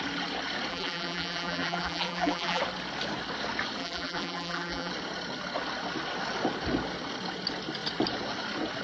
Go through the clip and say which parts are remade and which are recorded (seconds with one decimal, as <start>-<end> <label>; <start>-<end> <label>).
0.0-0.7 recorded; 0.7-2.6 remade; 2.6-3.8 recorded; 3.8-4.9 remade; 4.9-8.8 recorded